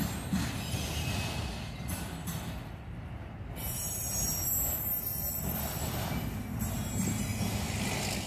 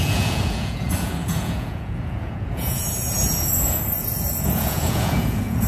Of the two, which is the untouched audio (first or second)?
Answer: first